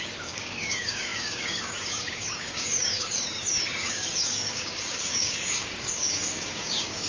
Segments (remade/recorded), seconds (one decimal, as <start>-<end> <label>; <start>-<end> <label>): 0.0-7.1 remade